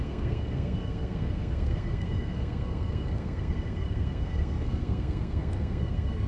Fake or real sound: fake